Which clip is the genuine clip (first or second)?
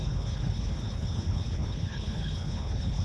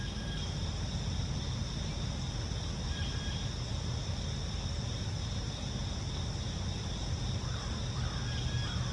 second